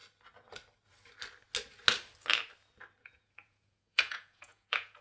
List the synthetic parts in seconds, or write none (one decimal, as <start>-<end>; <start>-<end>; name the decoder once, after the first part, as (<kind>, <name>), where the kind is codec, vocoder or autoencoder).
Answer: 3.0-5.0 (vocoder, Vocos)